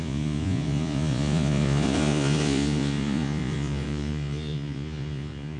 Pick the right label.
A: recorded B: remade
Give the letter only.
B